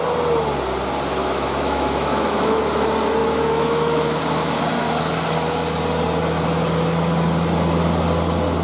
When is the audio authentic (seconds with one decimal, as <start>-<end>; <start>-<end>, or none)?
0.0-1.2; 2.6-3.2; 4.2-8.6